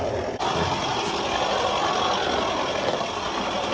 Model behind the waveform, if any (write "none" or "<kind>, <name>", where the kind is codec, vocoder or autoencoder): none